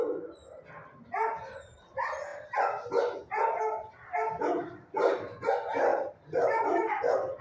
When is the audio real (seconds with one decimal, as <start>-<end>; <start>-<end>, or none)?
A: 0.0-5.9; 6.9-7.4